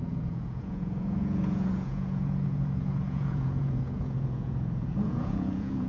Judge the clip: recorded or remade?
remade